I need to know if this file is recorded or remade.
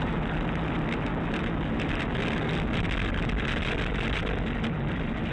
recorded